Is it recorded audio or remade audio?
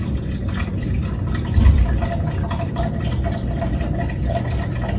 recorded